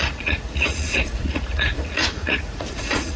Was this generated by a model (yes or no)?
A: yes